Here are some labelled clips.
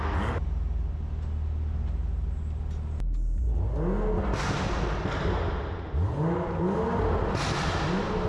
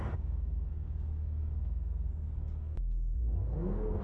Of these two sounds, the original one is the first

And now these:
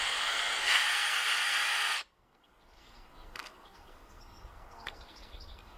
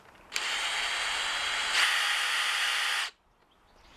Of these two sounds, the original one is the second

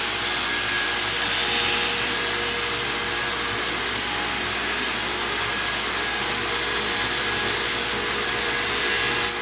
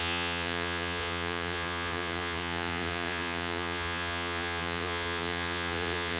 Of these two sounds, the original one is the first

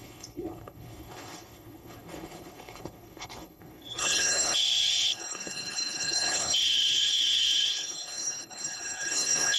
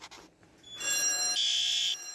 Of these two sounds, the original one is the second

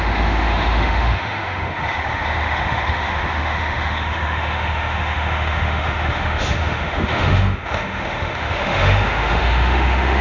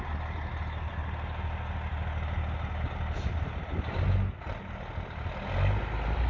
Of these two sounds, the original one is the second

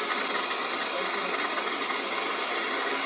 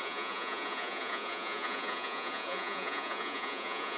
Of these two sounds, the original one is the first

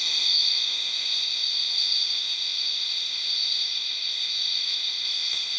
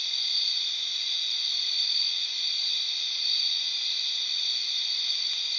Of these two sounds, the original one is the second